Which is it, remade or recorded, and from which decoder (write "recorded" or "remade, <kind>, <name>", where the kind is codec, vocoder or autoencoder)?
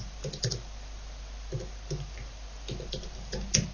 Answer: recorded